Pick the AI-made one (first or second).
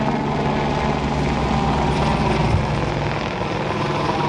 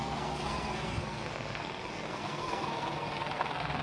second